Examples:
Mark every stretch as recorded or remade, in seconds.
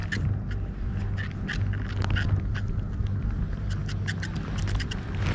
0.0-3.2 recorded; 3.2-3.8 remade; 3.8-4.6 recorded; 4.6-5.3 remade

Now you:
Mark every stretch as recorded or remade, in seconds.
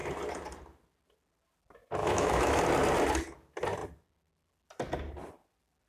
0.0-2.0 recorded; 2.0-2.6 remade; 2.6-5.9 recorded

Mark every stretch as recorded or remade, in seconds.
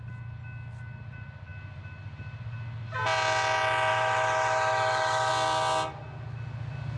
0.0-3.9 recorded; 3.9-5.3 remade; 5.3-7.0 recorded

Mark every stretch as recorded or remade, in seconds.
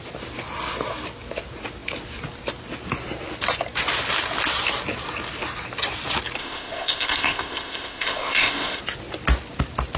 0.0-6.4 recorded; 6.4-8.8 remade; 8.8-10.0 recorded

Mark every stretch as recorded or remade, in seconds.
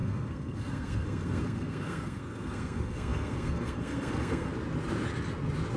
0.0-4.5 remade; 4.5-5.8 recorded